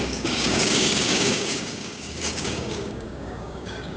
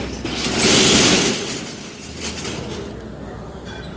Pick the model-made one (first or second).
first